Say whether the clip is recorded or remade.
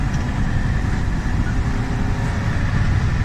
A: recorded